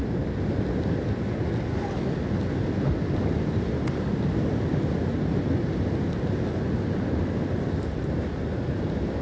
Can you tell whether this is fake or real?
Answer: real